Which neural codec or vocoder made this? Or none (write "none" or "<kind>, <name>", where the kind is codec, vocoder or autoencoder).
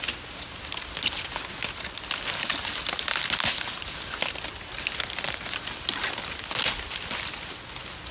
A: none